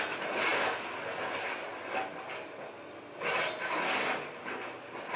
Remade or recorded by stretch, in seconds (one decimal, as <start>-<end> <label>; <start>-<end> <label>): 0.0-5.2 recorded